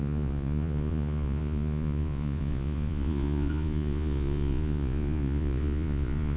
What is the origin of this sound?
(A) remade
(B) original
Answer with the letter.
A